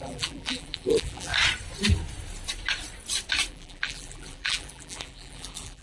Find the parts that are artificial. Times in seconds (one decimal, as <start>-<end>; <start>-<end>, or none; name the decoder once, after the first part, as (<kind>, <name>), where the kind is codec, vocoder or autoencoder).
0.0-1.3 (vocoder, BigVGAN v2); 3.5-5.8